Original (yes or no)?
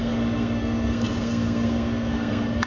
no